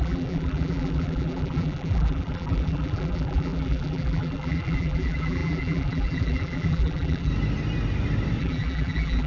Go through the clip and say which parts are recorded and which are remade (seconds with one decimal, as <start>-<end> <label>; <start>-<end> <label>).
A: 0.0-7.3 remade; 7.3-8.4 recorded; 8.4-9.3 remade